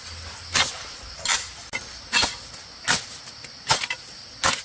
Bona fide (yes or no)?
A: yes